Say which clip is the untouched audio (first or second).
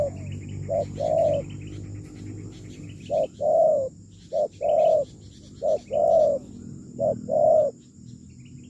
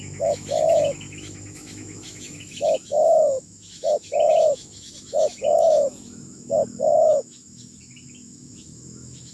first